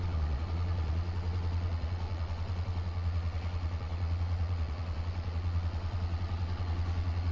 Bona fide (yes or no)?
no